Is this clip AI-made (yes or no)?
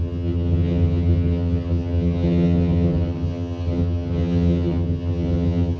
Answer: yes